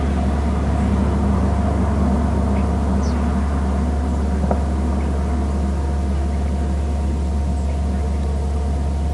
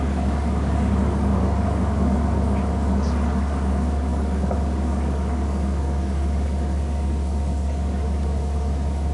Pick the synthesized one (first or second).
second